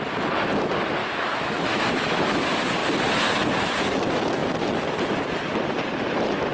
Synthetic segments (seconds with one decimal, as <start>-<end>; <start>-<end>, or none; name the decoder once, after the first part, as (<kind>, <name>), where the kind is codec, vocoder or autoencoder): 1.0-2.4 (autoencoder, DAC-VAE)